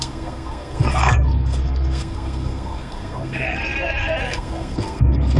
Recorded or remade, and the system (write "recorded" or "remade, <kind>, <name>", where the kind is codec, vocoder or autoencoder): remade, codec, SNAC